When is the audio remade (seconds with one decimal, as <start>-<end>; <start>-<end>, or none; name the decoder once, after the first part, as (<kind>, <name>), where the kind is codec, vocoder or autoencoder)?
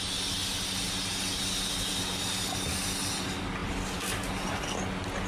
3.6-4.8 (vocoder, BigVGAN v2)